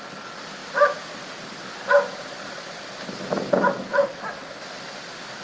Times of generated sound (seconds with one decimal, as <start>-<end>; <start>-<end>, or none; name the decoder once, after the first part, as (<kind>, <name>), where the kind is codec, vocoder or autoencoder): none